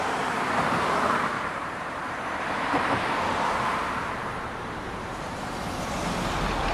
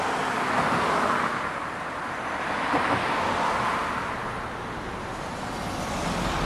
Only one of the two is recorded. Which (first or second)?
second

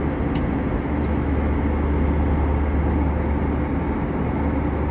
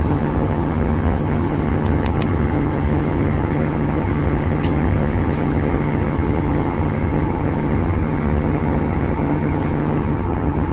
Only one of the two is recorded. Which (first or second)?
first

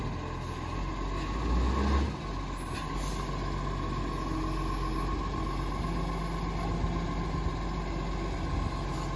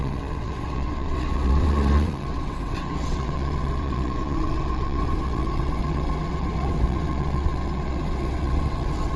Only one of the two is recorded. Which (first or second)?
first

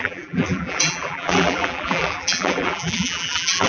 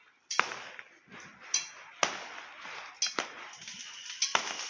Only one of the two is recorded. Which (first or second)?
second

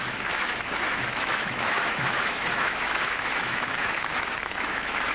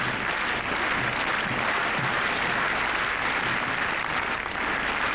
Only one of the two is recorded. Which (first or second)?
second